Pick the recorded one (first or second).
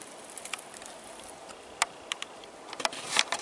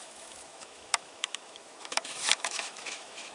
first